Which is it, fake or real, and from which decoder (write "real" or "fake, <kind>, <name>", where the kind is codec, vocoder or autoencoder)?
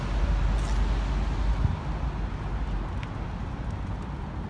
real